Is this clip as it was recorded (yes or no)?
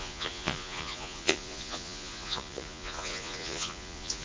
no